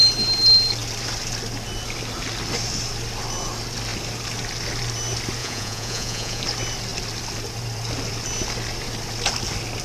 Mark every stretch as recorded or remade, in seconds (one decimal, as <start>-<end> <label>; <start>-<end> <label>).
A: 0.0-5.4 recorded; 5.4-6.4 remade; 6.4-9.8 recorded